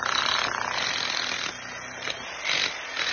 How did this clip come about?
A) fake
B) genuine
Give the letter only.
B